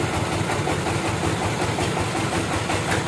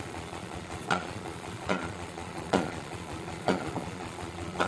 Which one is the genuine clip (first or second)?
first